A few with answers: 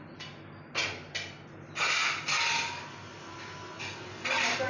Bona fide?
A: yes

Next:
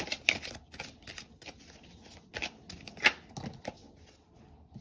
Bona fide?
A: yes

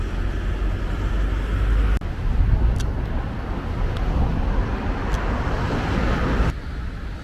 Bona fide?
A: yes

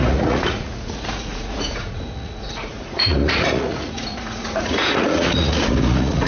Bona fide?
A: no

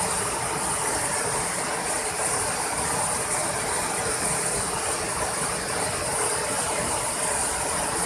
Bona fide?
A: yes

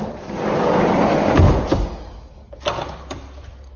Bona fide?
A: yes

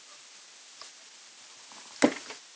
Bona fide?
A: yes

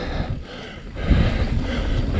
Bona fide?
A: yes